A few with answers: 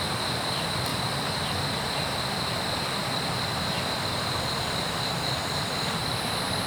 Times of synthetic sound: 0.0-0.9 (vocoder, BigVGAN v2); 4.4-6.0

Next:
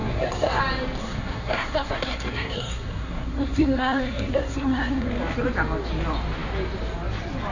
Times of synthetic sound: 0.0-0.6 (codec, SNAC); 1.0-5.1

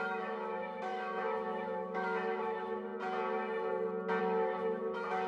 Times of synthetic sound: 0.0-2.9 (autoencoder, DAC-VAE); 4.2-5.3

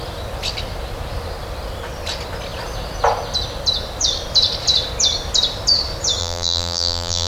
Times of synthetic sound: 6.2-7.3 (vocoder, BigVGAN v2)